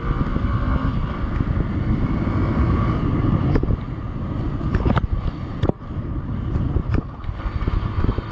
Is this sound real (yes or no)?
yes